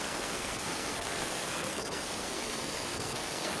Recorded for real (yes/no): no